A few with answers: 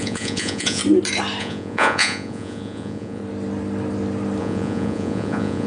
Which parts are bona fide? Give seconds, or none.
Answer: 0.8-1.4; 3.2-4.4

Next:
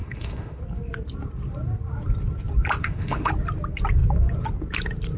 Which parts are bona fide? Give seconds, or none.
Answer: 0.6-2.8; 3.3-5.2

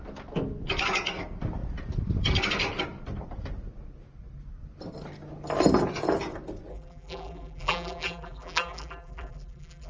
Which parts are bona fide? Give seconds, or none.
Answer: 0.0-6.7

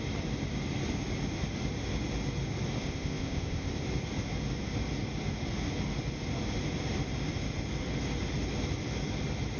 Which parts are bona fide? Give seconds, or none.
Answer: 0.0-2.8; 3.7-9.6

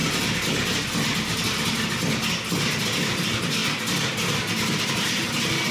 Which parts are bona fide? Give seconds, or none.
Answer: 0.0-5.7

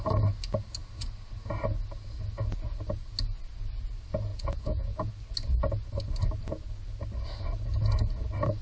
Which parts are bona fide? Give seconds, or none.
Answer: 0.0-4.3; 5.1-8.6

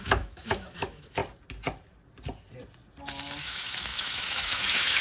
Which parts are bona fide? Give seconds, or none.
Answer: 1.2-3.4

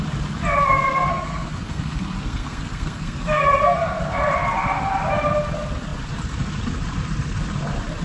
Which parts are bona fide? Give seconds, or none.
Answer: 0.0-1.1; 4.0-8.0